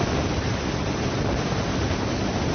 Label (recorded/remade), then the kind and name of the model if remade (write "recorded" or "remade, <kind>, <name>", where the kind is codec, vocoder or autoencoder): recorded